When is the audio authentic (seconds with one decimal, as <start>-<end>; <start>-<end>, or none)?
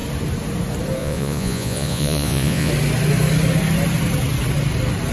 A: 0.0-1.0; 2.7-5.1